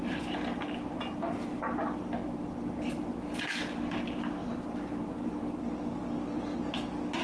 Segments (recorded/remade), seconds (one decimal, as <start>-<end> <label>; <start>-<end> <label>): 0.0-7.2 recorded